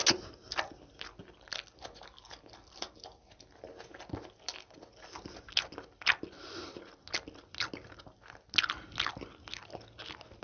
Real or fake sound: real